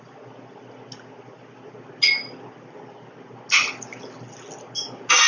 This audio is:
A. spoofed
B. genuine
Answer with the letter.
B